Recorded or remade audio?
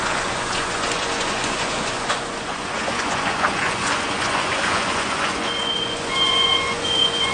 remade